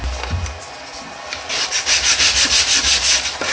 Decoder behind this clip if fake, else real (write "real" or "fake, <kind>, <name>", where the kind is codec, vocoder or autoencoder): real